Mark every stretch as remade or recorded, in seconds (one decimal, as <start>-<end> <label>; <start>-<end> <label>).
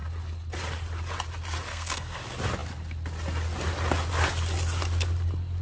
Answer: 0.0-1.7 recorded; 1.7-2.2 remade; 2.2-5.6 recorded